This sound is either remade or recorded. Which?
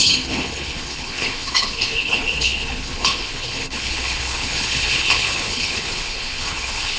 remade